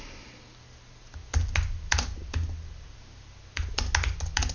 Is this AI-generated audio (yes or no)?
no